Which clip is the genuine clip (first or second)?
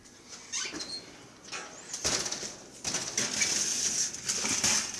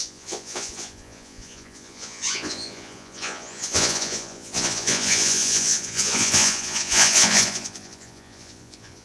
first